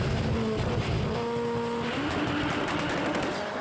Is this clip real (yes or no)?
yes